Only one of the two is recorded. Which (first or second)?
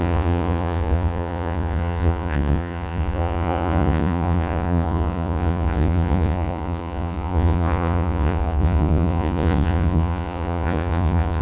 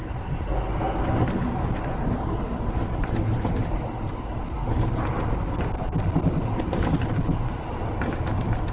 second